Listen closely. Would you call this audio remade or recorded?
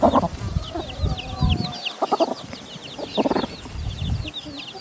recorded